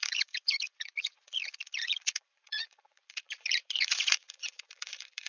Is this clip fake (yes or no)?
yes